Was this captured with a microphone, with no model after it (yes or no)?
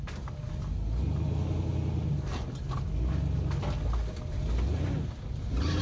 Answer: yes